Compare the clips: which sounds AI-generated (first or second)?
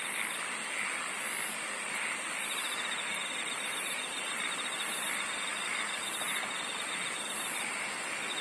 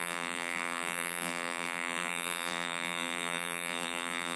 second